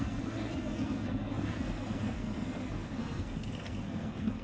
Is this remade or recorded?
remade